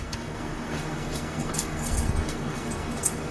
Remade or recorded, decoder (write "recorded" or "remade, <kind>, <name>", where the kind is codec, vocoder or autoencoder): remade, codec, SNAC